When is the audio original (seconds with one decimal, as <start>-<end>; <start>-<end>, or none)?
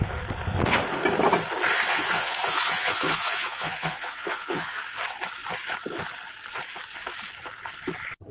0.0-1.9; 4.8-8.3